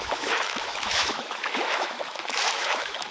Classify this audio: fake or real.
fake